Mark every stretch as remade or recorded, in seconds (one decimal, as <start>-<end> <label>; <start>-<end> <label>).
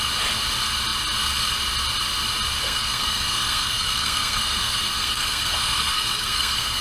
0.0-2.6 recorded; 2.6-6.8 remade